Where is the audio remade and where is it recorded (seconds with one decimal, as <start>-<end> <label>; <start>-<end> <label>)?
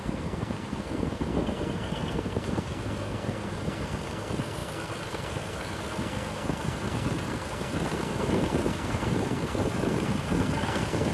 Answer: 0.0-11.1 remade